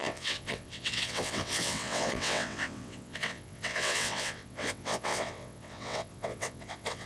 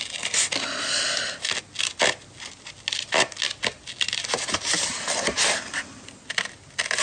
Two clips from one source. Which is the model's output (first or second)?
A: first